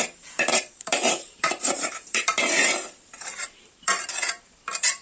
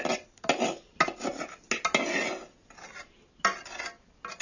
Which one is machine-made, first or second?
first